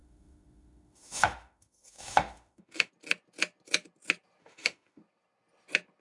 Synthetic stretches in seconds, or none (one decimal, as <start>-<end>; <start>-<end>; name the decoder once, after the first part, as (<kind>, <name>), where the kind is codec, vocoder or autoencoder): 0.0-2.9 (autoencoder, DAC-VAE); 4.4-5.0

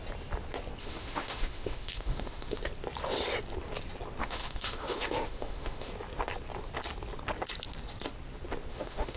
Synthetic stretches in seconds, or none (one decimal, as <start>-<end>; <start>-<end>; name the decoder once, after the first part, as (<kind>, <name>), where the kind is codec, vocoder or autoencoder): 0.8-2.6 (autoencoder, DAC-VAE); 4.2-5.9; 8.7-9.2

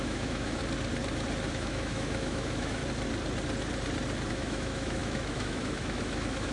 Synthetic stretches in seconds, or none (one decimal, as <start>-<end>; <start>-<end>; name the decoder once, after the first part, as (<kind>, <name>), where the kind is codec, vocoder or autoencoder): 0.0-0.6 (autoencoder, DAC-VAE); 1.5-2.8; 4.3-6.5

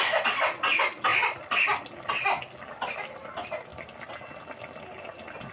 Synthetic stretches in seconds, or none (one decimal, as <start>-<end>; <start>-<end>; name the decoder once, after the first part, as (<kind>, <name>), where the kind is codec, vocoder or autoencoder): none

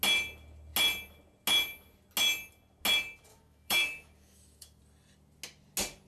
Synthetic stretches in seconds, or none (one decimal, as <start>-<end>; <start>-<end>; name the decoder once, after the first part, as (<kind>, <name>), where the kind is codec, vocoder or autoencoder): 3.3-4.8 (autoencoder, DAC-VAE)

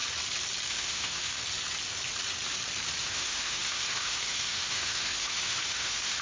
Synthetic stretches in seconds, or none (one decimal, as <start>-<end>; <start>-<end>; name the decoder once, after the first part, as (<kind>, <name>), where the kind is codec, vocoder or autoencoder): 0.7-1.4 (autoencoder, DAC-VAE); 3.0-6.2

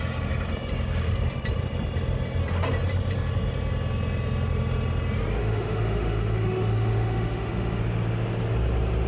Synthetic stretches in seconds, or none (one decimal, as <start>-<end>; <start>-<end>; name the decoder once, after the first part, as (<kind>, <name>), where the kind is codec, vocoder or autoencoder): 5.4-7.8 (autoencoder, DAC-VAE)